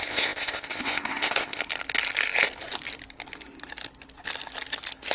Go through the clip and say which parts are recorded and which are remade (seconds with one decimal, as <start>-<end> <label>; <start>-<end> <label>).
0.0-1.6 remade; 1.6-5.1 recorded